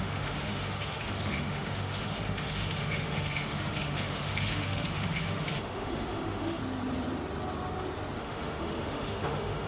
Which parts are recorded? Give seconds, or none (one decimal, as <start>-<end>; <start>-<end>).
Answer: 6.6-8.2